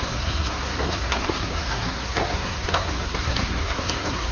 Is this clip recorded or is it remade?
remade